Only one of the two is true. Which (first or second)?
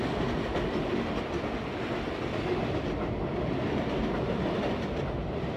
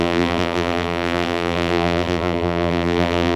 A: first